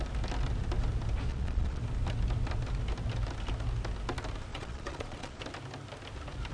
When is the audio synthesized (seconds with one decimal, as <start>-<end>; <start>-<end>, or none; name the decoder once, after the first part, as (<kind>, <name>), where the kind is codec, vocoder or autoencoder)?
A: 1.3-1.8 (vocoder, Vocos); 4.5-5.4